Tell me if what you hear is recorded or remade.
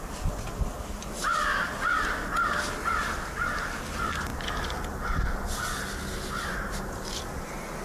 recorded